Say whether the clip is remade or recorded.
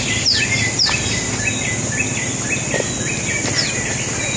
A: recorded